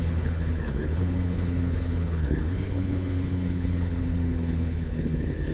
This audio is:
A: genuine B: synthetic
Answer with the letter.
B